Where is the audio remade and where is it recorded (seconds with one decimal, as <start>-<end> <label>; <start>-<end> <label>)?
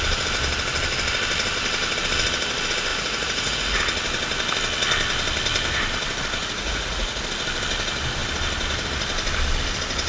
0.0-2.9 recorded; 2.9-3.8 remade; 3.8-6.4 recorded; 6.4-7.2 remade; 7.2-10.1 recorded